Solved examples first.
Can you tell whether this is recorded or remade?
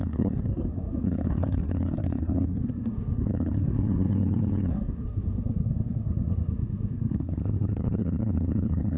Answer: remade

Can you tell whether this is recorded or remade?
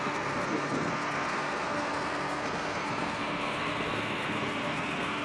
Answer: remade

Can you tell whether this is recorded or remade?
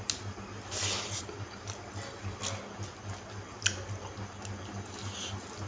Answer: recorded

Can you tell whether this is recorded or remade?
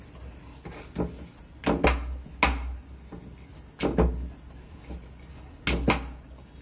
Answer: recorded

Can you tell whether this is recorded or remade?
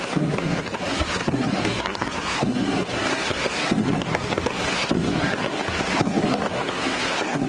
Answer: remade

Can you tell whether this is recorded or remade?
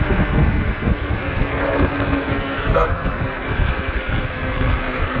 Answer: remade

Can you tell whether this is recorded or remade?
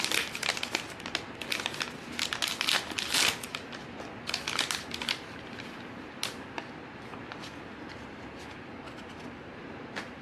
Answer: recorded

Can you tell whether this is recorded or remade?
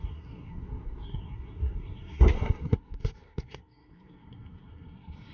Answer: remade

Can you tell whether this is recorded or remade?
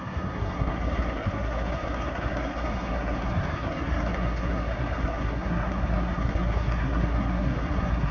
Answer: remade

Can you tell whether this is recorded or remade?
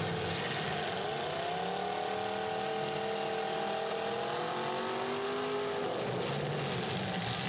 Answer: recorded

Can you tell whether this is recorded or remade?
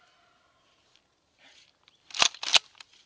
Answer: recorded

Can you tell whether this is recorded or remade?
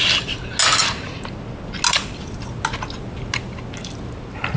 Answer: recorded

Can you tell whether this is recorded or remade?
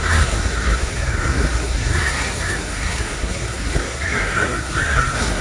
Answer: remade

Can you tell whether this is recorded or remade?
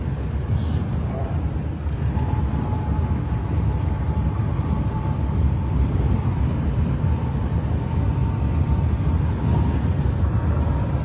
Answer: recorded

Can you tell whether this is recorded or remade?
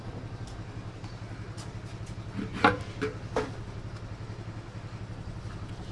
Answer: recorded